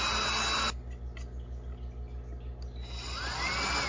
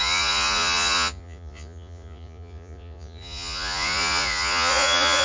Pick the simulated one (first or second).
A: second